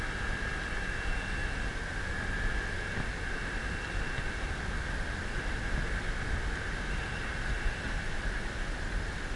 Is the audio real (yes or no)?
yes